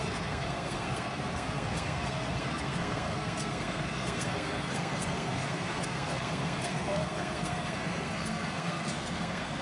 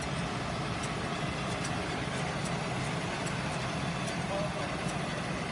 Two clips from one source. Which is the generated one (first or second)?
first